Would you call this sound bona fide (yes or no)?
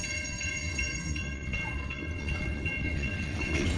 no